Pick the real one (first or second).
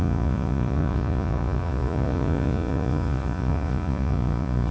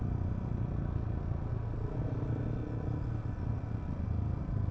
second